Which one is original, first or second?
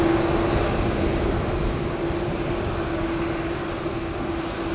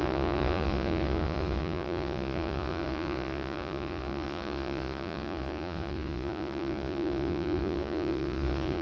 first